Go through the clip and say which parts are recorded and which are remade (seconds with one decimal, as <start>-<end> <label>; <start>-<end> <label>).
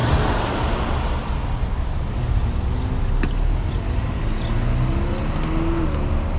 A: 0.0-6.4 recorded